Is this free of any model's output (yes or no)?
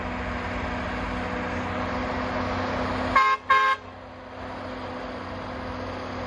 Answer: yes